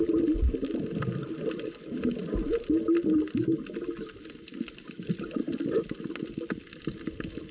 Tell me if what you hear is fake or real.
real